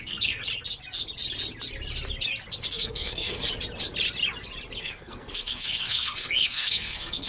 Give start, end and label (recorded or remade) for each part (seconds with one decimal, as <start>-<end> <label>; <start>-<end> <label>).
0.0-0.4 remade; 0.4-2.7 recorded; 2.7-3.4 remade; 3.4-4.8 recorded; 4.8-7.3 remade